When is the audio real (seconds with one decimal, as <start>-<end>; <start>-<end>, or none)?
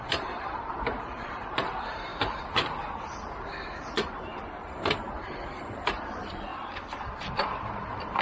6.5-7.3